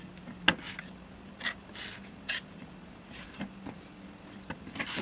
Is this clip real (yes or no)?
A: yes